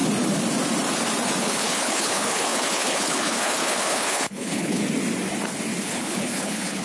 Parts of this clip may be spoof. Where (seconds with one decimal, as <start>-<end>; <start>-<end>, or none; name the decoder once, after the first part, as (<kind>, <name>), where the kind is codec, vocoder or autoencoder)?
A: 1.4-4.8 (codec, HILCodec); 5.8-6.8